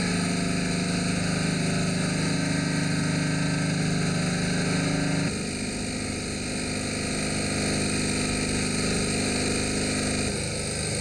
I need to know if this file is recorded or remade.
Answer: recorded